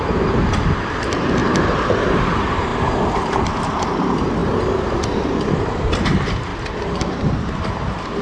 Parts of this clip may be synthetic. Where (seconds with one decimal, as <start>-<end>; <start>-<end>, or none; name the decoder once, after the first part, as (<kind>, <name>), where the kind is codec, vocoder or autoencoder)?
0.0-8.2 (vocoder, BigVGAN v2)